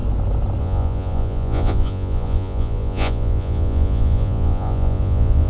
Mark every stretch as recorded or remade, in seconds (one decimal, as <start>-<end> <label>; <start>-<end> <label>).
0.0-0.6 recorded; 0.6-5.5 remade